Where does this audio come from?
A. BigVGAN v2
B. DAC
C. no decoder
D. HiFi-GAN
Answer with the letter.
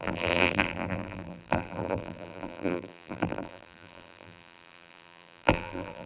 A